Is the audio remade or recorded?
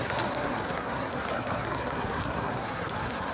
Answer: remade